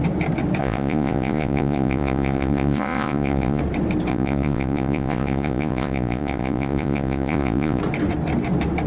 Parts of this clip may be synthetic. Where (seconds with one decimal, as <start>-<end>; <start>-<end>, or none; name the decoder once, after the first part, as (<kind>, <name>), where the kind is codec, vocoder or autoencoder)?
0.6-3.6 (vocoder, Vocos); 4.1-7.8